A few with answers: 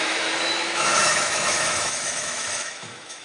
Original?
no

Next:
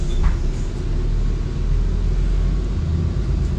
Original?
yes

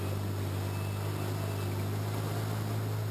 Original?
yes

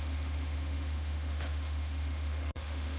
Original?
no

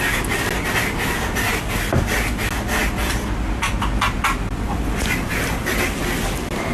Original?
yes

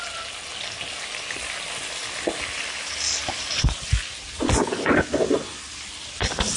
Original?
yes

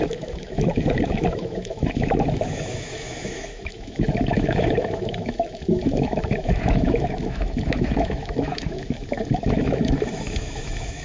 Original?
no